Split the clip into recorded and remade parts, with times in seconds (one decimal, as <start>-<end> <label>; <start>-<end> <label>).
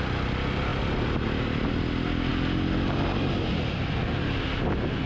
0.0-5.1 recorded